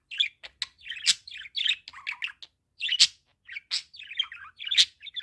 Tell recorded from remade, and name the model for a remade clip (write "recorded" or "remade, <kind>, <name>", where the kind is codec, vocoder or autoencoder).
recorded